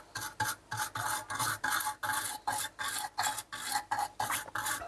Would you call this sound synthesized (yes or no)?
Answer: no